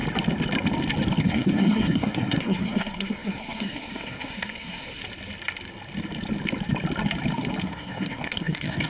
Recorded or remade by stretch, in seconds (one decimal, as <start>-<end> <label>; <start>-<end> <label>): 0.0-1.2 recorded; 1.2-5.0 remade; 5.0-7.6 recorded; 7.6-8.9 remade